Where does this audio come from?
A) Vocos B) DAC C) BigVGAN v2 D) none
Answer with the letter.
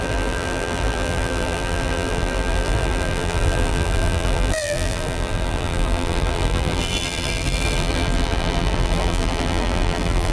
C